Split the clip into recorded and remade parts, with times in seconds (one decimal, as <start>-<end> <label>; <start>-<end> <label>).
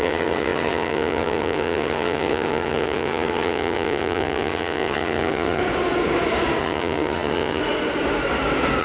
0.0-5.6 remade; 5.6-6.6 recorded; 6.6-7.6 remade; 7.6-8.8 recorded